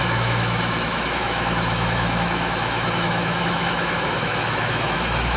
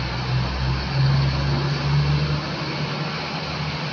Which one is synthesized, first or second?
first